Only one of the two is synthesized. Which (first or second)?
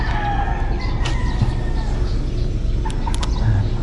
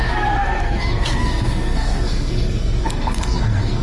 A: second